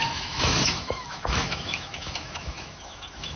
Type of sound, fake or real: fake